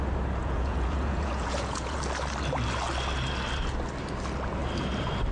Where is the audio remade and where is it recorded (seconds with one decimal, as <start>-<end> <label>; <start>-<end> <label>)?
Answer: 0.0-0.4 recorded; 0.4-2.0 remade; 2.0-5.3 recorded